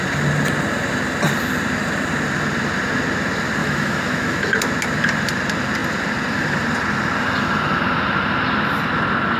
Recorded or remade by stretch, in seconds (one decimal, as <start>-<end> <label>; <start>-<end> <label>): 0.0-3.6 recorded; 3.6-4.5 remade; 4.5-9.4 recorded